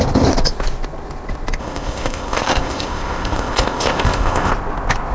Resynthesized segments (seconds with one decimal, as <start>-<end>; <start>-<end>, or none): 1.6-4.5